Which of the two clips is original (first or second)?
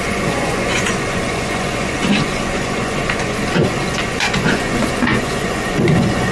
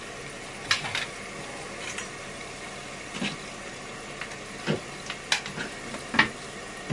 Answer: second